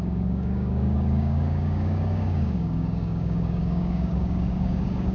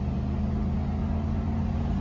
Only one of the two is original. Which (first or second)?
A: second